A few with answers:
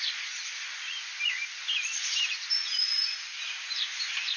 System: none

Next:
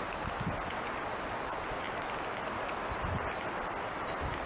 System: none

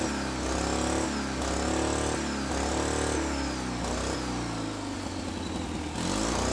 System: none